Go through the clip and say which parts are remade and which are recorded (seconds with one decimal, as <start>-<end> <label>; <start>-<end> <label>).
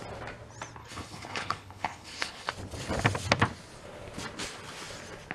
0.0-0.8 recorded; 0.8-2.5 remade; 2.5-5.3 recorded